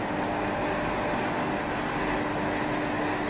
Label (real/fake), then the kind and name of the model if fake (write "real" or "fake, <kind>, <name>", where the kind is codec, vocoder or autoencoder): real